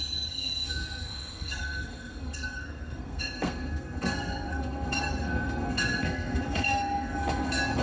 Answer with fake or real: fake